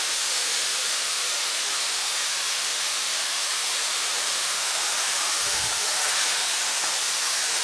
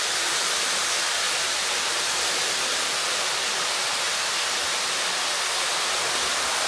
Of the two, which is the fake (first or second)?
first